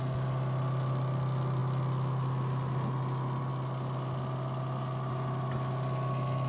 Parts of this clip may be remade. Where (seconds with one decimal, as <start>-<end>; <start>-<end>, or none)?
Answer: none